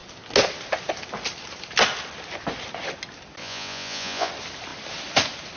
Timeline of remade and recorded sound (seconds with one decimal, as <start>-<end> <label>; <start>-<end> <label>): 0.0-3.4 recorded; 3.4-4.3 remade; 4.3-5.6 recorded